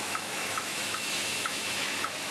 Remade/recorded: remade